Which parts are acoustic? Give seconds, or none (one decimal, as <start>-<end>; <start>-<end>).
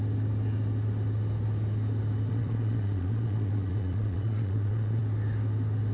0.0-2.3; 5.0-5.9